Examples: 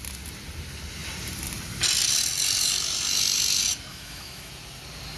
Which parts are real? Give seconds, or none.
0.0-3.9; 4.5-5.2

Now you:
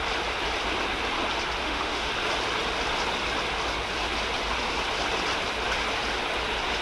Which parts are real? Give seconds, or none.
0.0-1.6; 2.1-6.8

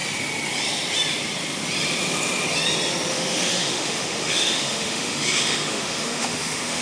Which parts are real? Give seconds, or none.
0.0-3.1

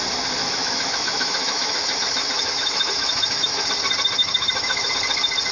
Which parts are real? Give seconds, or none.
0.0-0.4; 3.7-4.2; 4.9-5.5

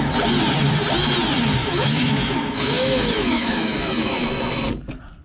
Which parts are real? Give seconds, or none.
0.0-1.6; 4.7-5.2

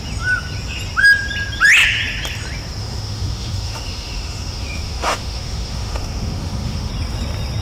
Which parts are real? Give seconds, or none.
0.0-2.8; 6.9-7.6